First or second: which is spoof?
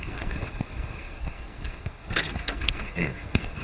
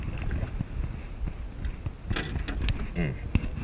first